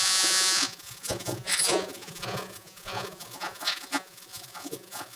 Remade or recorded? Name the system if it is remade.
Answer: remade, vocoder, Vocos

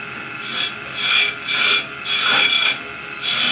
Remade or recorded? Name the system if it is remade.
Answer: recorded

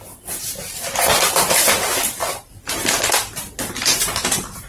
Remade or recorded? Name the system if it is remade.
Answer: remade, vocoder, BigVGAN v2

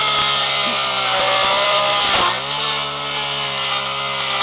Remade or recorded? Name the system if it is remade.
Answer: recorded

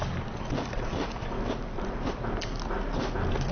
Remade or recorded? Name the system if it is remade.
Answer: recorded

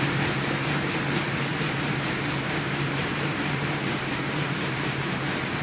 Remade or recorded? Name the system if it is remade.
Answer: remade, vocoder, BigVGAN v2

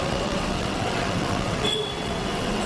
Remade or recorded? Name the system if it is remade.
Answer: remade, vocoder, WaveNeXt